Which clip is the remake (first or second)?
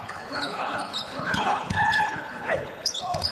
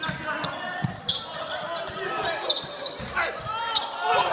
first